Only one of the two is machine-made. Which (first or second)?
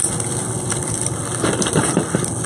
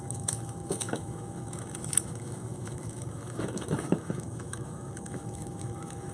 second